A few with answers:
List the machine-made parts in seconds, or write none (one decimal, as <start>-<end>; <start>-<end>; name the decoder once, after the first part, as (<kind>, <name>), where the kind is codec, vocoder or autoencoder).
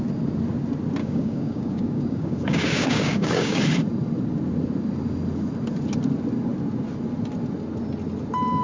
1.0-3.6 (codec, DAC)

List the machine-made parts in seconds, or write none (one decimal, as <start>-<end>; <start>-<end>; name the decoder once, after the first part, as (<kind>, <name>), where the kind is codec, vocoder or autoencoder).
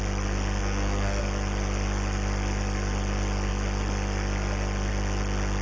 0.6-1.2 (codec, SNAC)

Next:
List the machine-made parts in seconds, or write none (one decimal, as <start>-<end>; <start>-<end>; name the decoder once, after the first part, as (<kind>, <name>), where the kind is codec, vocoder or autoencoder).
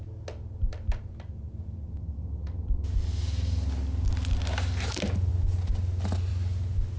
none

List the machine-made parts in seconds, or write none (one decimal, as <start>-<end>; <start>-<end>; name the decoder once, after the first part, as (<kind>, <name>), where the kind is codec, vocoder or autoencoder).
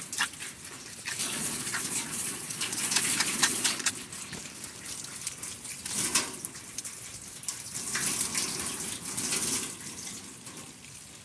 1.2-3.9 (vocoder, Vocos)